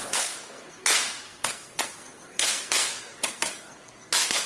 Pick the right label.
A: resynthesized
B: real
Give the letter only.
A